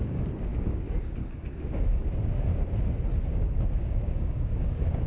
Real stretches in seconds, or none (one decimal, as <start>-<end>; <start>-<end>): 2.5-3.3